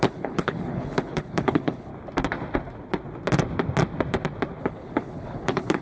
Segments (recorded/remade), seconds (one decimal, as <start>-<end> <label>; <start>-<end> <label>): 0.0-1.9 remade; 1.9-4.6 recorded; 4.6-5.8 remade